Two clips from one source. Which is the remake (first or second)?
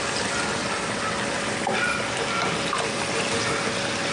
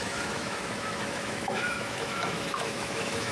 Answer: second